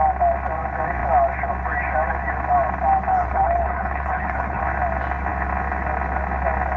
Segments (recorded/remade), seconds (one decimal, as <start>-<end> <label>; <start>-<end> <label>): 0.0-3.1 recorded; 3.1-4.6 remade; 4.6-6.8 recorded